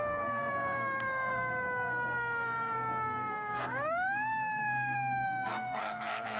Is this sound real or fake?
fake